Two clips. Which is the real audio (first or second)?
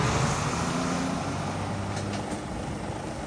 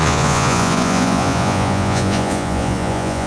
first